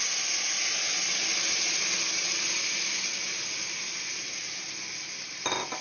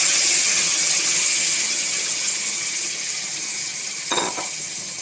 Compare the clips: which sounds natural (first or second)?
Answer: first